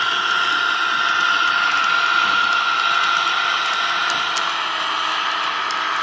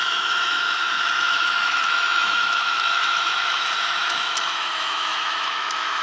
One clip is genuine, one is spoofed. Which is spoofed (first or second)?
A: second